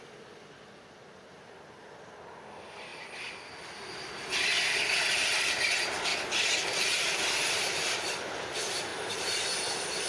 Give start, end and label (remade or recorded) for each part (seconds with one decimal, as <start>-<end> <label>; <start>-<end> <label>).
0.0-10.1 recorded